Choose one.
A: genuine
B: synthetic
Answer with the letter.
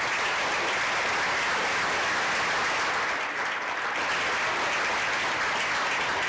A